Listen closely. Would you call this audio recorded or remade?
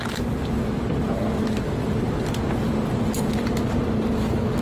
recorded